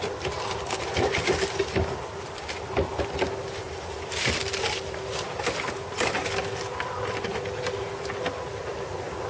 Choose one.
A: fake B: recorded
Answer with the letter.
B